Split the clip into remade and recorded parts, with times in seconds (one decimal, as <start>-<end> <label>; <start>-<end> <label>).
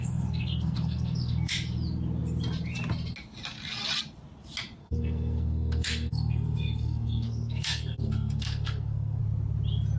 0.0-1.5 remade; 1.5-4.8 recorded; 4.8-9.2 remade; 9.2-10.0 recorded